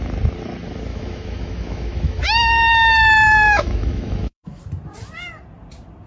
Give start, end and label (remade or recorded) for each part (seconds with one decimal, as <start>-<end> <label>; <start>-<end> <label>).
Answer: 0.0-0.9 recorded; 0.9-4.6 remade; 4.6-6.1 recorded